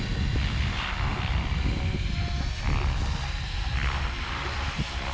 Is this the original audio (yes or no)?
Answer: yes